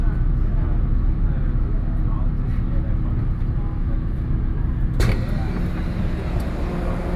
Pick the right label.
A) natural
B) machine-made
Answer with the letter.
A